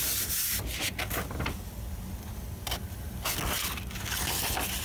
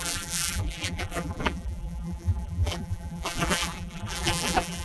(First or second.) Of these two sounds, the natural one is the first